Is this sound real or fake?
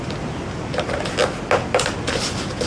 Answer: real